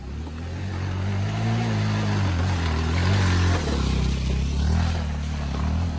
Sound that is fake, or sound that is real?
real